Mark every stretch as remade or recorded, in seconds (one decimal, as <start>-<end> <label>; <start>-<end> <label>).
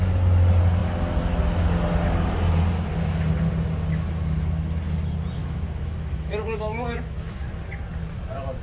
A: 0.0-5.4 recorded; 5.4-7.5 remade; 7.5-8.6 recorded